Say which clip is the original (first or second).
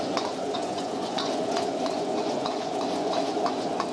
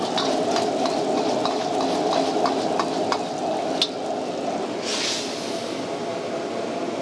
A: second